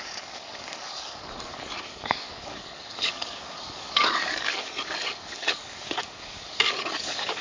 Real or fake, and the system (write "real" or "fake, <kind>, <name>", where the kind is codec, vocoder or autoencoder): fake, codec, DAC